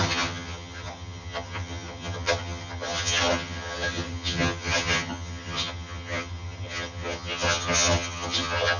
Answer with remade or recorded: remade